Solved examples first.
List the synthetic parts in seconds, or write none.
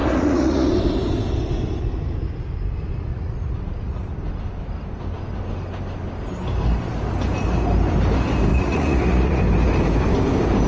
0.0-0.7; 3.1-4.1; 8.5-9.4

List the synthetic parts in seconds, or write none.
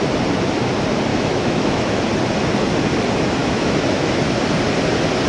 1.1-2.0; 3.4-4.2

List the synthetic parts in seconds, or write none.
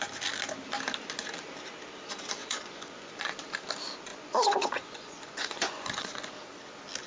2.4-3.1; 4.1-6.3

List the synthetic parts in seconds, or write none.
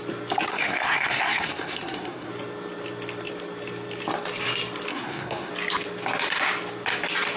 0.5-2.3; 4.9-5.5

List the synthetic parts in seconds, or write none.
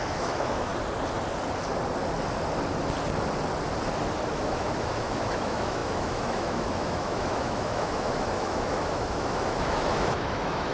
0.0-0.7; 4.3-10.7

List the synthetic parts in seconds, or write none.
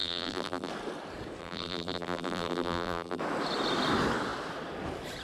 0.0-0.7; 1.4-3.2